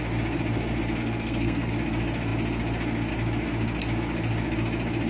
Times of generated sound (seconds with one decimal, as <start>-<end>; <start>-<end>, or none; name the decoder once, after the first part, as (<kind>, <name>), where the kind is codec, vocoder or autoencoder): 1.0-1.7 (codec, SNAC)

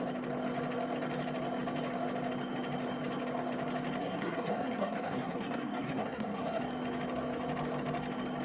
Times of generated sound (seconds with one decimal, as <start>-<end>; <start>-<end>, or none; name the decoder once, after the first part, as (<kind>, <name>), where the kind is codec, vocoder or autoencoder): 4.0-6.6 (codec, SNAC)

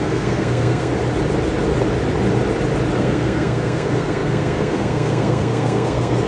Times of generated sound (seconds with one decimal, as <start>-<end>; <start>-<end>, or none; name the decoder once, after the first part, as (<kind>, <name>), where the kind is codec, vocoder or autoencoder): 0.0-0.9 (codec, SNAC); 3.0-6.3

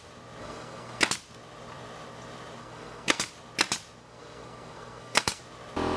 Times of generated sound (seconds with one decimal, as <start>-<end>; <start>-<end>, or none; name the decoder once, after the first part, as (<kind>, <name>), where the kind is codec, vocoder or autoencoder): 0.4-1.0 (codec, SNAC); 2.6-3.3; 4.0-5.4

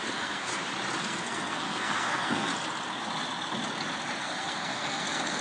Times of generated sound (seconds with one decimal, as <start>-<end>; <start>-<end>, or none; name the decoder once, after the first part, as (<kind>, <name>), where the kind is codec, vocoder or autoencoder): 0.0-0.5 (codec, SNAC); 1.0-2.5; 4.2-5.4